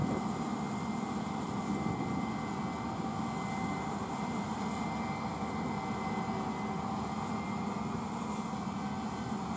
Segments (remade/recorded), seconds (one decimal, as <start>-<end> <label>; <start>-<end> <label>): 0.0-9.6 recorded